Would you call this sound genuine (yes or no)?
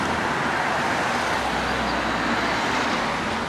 yes